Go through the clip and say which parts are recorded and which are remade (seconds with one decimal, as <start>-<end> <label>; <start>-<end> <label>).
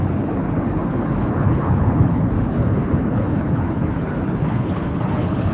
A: 0.0-5.5 remade